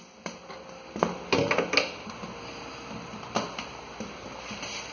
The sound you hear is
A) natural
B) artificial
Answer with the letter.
A